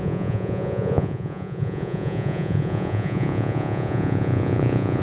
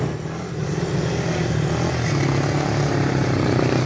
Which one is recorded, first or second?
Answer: second